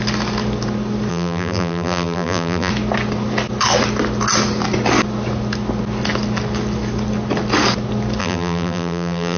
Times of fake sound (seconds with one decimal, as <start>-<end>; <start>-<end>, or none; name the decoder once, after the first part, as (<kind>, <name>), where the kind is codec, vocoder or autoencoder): 1.1-2.7 (vocoder, BigVGAN v2); 8.2-9.4